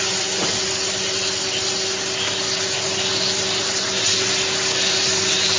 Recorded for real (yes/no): yes